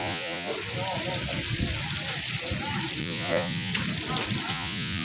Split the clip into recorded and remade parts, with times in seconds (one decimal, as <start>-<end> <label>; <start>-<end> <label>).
0.0-0.5 remade; 0.5-3.0 recorded; 3.0-3.7 remade; 3.7-4.5 recorded; 4.5-5.0 remade